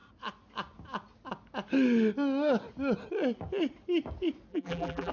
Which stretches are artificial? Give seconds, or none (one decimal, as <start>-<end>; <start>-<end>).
4.5-5.1